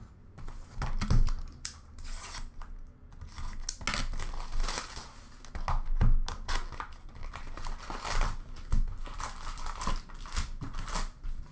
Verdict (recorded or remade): recorded